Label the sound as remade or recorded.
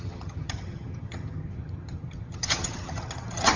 remade